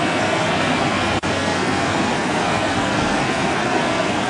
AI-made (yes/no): yes